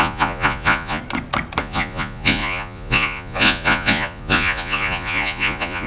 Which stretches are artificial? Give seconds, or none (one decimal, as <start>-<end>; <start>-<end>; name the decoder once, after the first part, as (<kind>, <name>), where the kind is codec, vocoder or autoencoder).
0.0-1.0 (vocoder, Vocos); 1.6-5.9